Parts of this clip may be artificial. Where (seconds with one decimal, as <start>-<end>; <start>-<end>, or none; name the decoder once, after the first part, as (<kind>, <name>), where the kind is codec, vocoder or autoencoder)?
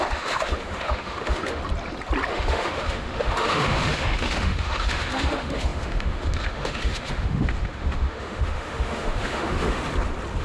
0.0-1.6 (autoencoder, DAC-VAE); 2.3-9.8